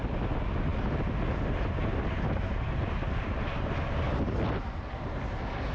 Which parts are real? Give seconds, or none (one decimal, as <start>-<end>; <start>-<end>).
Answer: 0.0-5.7